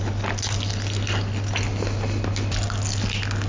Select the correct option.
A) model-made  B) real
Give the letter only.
B